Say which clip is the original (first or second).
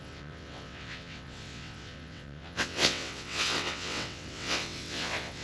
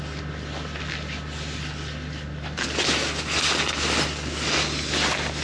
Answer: second